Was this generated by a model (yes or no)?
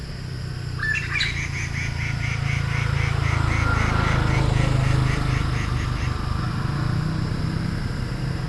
no